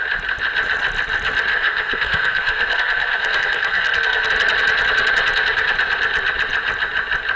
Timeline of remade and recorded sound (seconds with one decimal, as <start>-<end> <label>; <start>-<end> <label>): 0.0-1.5 recorded; 1.5-4.3 remade; 4.3-7.4 recorded